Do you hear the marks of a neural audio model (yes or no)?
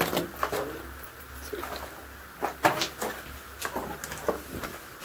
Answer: no